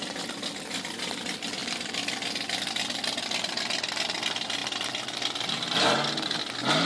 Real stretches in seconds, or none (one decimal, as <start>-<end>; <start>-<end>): 0.0-6.9